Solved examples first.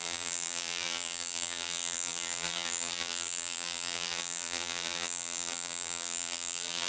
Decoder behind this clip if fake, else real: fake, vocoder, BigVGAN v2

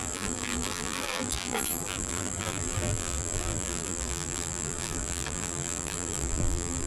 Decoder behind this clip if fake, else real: fake, vocoder, BigVGAN v2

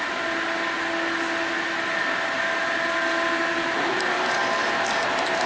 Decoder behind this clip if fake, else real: real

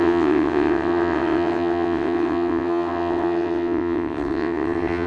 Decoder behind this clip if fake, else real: fake, vocoder, WaveNeXt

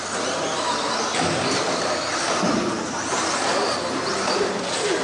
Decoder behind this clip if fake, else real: real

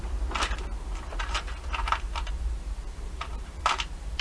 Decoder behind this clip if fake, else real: fake, vocoder, BigVGAN v2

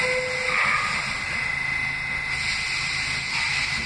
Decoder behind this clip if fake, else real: real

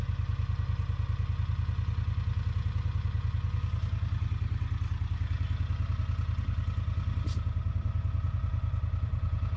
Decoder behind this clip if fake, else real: real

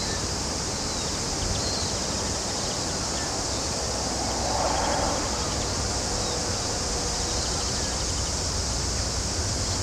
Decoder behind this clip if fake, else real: real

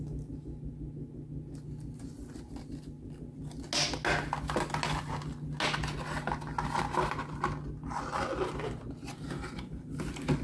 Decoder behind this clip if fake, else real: real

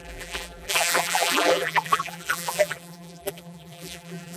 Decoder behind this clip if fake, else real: fake, vocoder, BigVGAN v2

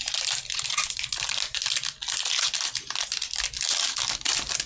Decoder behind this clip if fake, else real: real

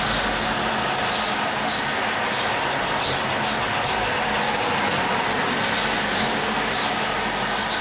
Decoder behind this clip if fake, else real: real